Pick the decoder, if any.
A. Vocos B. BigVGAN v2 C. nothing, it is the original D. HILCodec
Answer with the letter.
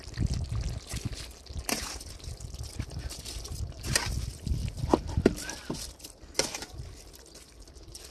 C